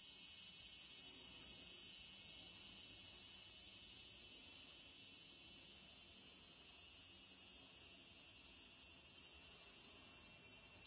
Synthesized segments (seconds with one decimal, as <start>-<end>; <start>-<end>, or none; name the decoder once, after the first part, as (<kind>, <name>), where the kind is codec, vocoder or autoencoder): none